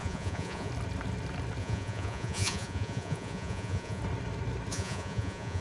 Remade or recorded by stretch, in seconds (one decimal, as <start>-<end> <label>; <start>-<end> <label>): 0.0-0.7 remade; 0.7-1.6 recorded; 1.6-4.0 remade; 4.0-4.7 recorded; 4.7-5.6 remade